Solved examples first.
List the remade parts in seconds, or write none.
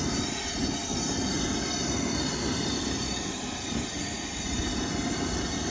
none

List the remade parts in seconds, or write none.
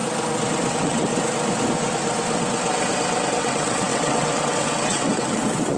0.7-1.1 (vocoder, WaveNeXt); 3.3-5.8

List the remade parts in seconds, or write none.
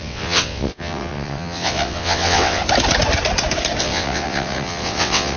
0.0-2.6 (vocoder, WaveNeXt); 3.8-5.4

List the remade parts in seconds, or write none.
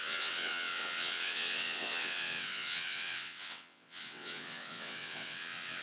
0.0-5.8 (vocoder, WaveNeXt)